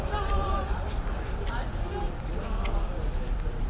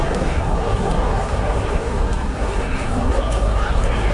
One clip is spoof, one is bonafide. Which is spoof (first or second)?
second